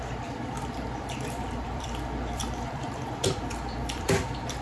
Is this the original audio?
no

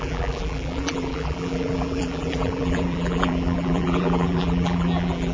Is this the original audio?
no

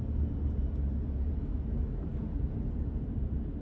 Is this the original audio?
yes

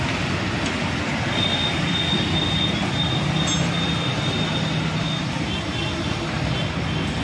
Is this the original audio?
yes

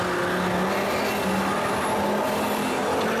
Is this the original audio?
yes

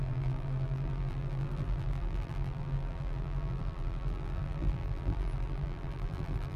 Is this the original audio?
no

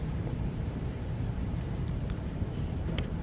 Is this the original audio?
no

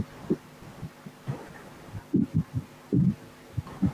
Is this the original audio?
no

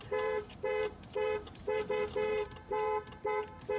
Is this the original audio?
no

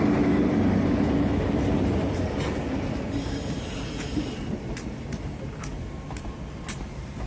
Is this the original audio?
yes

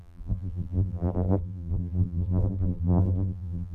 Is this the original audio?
no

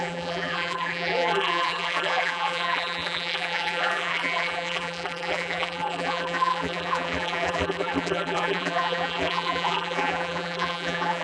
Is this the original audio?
no